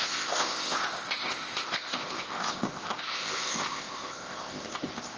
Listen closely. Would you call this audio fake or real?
fake